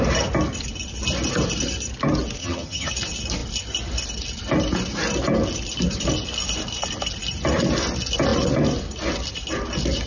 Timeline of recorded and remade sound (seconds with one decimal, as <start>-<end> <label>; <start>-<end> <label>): 0.0-2.4 recorded; 2.4-2.9 remade; 2.9-10.1 recorded